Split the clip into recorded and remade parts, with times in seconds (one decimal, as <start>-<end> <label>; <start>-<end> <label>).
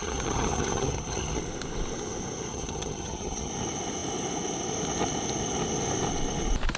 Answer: 0.0-1.4 remade; 1.4-2.5 recorded; 2.5-3.5 remade; 3.5-6.8 recorded